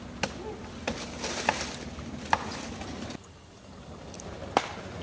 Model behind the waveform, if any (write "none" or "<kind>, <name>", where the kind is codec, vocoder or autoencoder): none